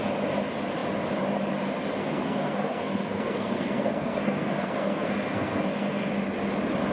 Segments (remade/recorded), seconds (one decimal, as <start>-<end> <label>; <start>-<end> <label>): 0.0-2.0 recorded; 2.0-6.1 remade; 6.1-6.9 recorded